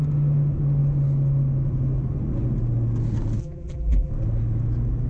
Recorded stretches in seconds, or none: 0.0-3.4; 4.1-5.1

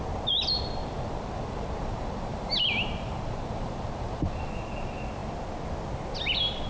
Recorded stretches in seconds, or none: 0.0-0.8; 4.5-6.7

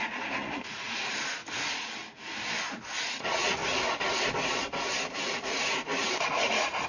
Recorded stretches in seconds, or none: 1.4-2.8; 3.6-5.2

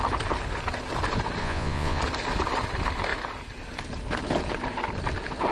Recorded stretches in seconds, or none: 0.0-1.4; 2.0-5.5

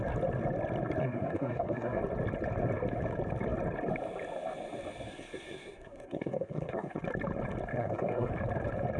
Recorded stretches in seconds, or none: 0.0-1.0; 2.0-5.1; 7.0-7.7; 8.3-9.0

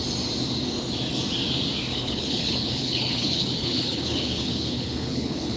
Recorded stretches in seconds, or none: 0.0-1.9

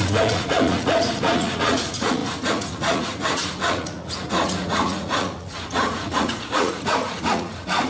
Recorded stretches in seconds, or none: none